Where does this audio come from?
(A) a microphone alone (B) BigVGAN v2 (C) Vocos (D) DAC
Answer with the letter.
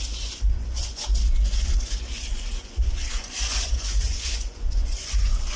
C